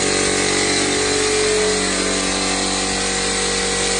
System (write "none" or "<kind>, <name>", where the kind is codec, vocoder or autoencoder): none